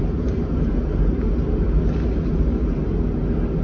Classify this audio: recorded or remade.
recorded